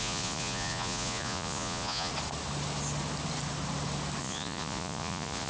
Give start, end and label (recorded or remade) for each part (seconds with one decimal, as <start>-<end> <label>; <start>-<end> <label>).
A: 0.0-2.1 remade; 2.1-4.2 recorded; 4.2-5.5 remade